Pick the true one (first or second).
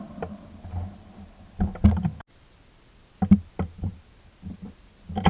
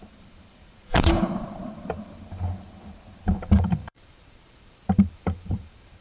first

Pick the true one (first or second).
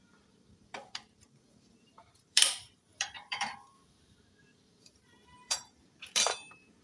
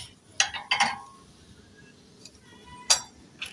second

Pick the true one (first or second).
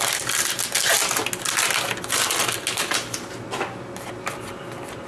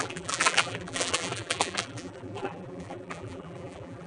first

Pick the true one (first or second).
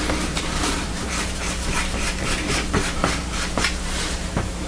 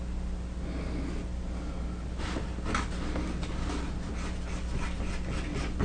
second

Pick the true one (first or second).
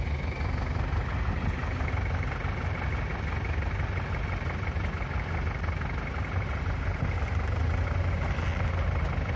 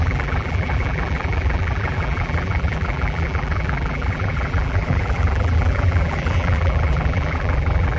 first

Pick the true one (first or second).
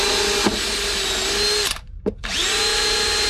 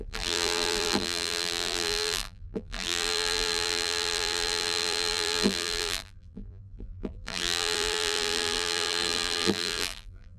first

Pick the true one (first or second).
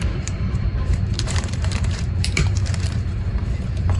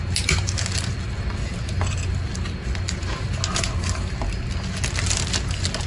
second